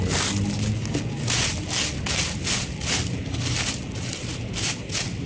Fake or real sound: real